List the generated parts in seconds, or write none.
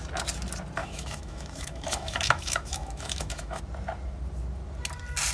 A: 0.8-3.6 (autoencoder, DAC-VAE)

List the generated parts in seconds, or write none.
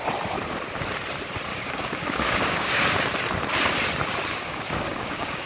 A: 1.5-3.0 (codec, DAC); 4.3-5.5